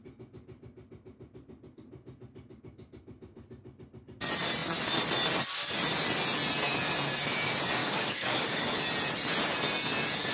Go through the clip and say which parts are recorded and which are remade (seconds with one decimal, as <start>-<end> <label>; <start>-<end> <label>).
0.0-7.8 recorded; 7.8-8.8 remade; 8.8-10.3 recorded